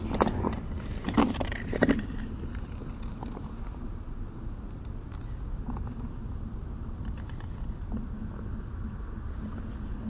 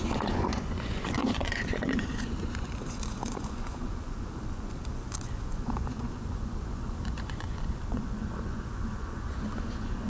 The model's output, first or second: second